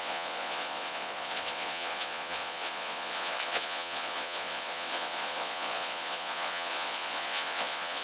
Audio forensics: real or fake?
fake